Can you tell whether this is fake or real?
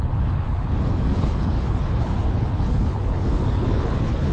fake